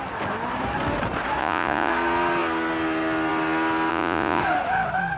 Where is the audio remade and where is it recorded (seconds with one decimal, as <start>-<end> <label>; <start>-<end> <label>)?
0.0-1.4 recorded; 1.4-1.9 remade; 1.9-3.9 recorded; 3.9-4.4 remade; 4.4-5.2 recorded

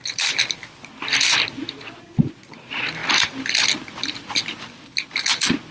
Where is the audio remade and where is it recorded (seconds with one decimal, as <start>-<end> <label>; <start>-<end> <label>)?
0.0-5.7 recorded

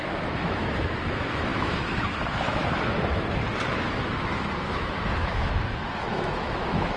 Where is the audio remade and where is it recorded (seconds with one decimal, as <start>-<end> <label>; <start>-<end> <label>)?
0.0-2.6 remade; 2.6-3.6 recorded; 3.6-7.0 remade

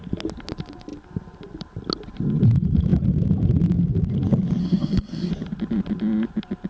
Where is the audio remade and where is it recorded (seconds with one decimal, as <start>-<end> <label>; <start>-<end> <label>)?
0.0-4.6 recorded; 4.6-5.3 remade; 5.3-6.7 recorded

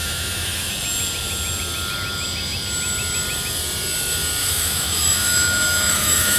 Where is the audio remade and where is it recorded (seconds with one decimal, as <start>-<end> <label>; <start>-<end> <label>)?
0.0-0.7 remade; 0.7-4.4 recorded; 4.4-6.4 remade

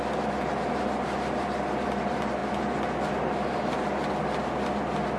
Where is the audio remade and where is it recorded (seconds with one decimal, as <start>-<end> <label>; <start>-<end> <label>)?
0.0-5.2 recorded

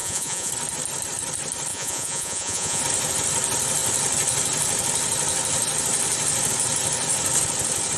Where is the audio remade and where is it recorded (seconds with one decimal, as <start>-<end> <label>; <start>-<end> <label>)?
0.0-0.5 remade; 0.5-1.7 recorded; 1.7-2.8 remade; 2.8-8.0 recorded

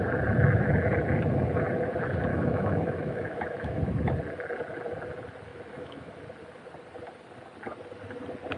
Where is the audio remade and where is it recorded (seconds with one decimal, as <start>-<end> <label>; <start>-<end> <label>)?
0.0-2.3 recorded; 2.3-3.8 remade; 3.8-5.5 recorded; 5.5-6.1 remade; 6.1-8.6 recorded